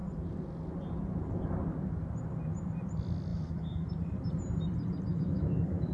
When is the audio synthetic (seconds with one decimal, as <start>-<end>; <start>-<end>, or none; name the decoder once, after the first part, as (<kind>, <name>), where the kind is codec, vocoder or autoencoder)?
3.3-3.9 (autoencoder, DAC-VAE); 5.1-5.9

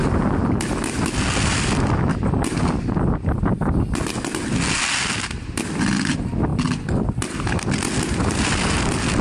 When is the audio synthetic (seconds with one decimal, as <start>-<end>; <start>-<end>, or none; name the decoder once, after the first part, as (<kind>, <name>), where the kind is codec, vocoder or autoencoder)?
none

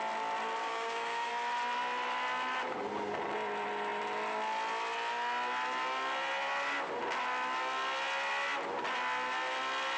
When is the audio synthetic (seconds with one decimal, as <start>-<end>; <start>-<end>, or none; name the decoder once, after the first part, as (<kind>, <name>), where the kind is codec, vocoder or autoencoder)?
0.6-1.3 (codec, DAC)

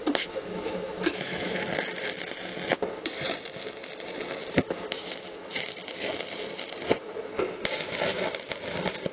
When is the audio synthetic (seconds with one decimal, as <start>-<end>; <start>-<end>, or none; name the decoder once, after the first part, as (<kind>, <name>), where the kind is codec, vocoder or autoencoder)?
0.0-2.1 (autoencoder, DAC-VAE); 4.4-6.3

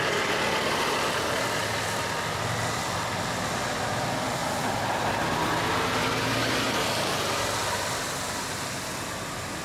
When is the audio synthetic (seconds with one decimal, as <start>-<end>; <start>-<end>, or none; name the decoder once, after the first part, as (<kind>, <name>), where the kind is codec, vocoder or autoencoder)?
none

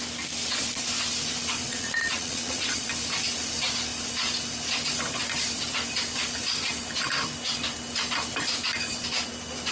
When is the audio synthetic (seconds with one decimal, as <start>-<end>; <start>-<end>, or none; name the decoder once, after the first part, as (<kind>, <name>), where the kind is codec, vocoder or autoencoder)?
1.6-2.9 (vocoder, Vocos)

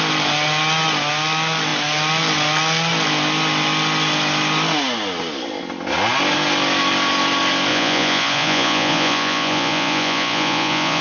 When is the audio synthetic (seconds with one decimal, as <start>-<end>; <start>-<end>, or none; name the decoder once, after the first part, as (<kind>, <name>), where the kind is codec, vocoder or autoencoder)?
7.7-11.0 (vocoder, Vocos)